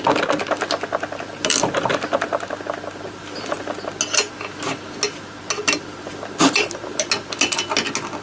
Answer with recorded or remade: recorded